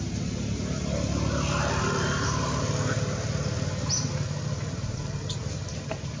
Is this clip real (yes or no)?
yes